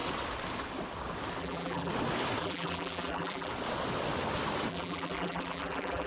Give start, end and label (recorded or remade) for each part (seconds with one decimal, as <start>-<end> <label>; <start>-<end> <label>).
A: 0.0-1.4 recorded; 1.4-1.9 remade; 1.9-2.4 recorded; 2.4-3.5 remade; 3.5-4.7 recorded; 4.7-6.1 remade